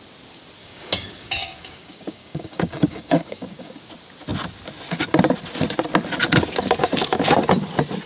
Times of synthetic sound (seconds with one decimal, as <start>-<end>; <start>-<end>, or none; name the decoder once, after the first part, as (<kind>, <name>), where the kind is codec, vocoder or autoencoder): 0.6-3.8 (codec, DAC)